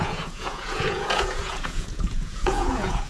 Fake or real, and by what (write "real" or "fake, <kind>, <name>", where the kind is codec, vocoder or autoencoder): fake, vocoder, Vocos